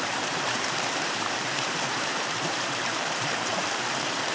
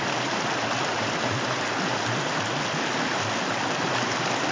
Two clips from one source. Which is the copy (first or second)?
first